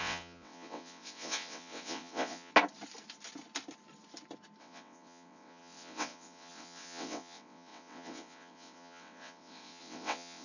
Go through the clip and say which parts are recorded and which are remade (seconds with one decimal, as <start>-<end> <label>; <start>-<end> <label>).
0.0-2.5 remade; 2.5-4.6 recorded; 4.6-10.4 remade